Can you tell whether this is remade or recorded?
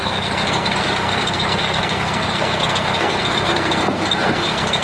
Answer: remade